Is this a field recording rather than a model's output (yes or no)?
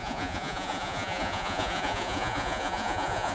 no